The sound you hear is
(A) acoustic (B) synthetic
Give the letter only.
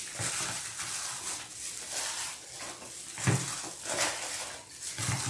A